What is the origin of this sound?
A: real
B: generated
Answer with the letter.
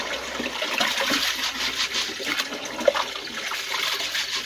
A